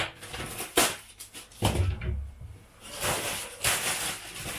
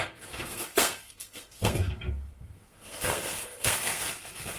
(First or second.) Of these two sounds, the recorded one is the first